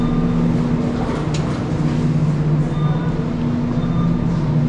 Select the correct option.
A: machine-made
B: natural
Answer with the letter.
B